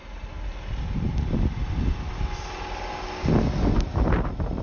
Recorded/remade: recorded